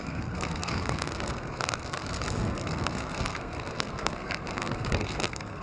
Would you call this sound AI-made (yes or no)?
yes